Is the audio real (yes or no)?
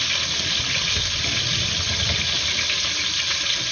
yes